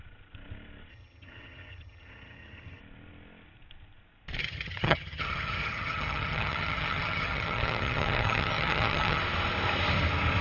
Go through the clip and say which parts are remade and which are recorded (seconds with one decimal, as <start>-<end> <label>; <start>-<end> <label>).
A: 0.0-0.9 recorded; 0.9-2.8 remade; 2.8-4.4 recorded; 4.4-9.2 remade; 9.2-10.4 recorded